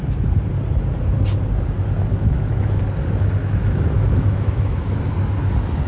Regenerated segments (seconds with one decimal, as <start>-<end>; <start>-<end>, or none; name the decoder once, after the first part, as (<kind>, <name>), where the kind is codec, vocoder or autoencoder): 2.1-2.8 (autoencoder, DAC-VAE); 3.4-5.0